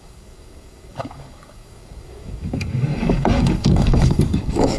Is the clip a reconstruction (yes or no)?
yes